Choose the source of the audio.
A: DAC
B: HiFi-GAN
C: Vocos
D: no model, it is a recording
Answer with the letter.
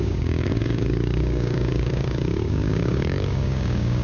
A